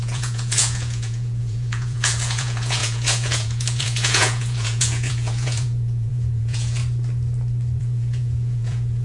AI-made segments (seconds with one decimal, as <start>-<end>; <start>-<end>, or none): 0.0-6.8; 7.8-9.0